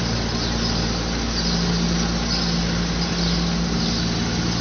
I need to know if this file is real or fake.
real